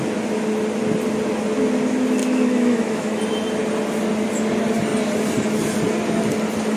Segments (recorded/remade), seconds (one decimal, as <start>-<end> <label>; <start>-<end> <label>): 0.0-2.2 recorded; 2.2-3.2 remade; 3.2-6.8 recorded